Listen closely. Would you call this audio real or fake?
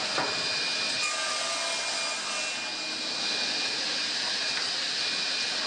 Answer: real